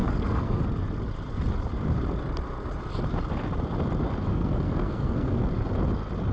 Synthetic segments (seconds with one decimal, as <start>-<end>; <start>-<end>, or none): 0.0-0.6; 4.3-5.5